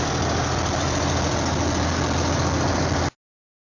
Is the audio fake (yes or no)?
no